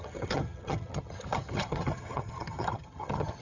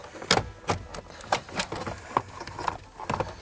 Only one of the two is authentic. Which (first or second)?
second